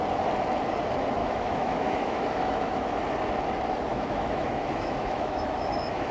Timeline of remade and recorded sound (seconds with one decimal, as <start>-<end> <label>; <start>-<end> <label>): 0.0-1.2 recorded; 1.2-3.0 remade; 3.0-3.9 recorded; 3.9-6.1 remade